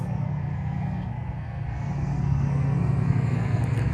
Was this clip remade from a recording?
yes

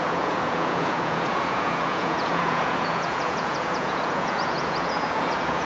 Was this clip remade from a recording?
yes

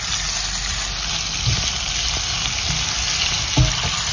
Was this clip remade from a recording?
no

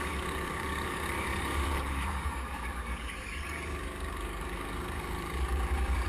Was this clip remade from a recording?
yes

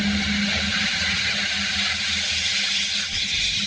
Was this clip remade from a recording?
no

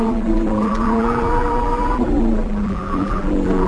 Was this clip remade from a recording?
yes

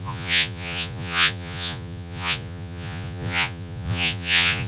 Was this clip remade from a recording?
yes